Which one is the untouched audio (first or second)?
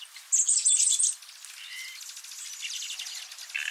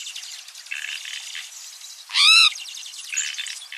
first